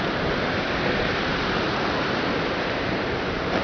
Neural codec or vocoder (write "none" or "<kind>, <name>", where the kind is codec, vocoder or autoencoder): vocoder, BigVGAN v2